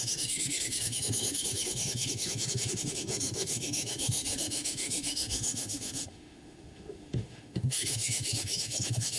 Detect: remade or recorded remade